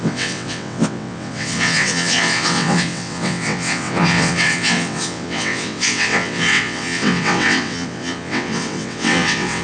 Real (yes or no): no